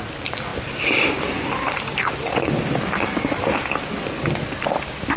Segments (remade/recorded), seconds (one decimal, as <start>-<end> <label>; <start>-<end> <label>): 0.0-0.5 recorded; 0.5-3.6 remade; 3.6-5.2 recorded